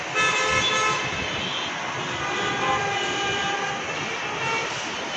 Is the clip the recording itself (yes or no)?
yes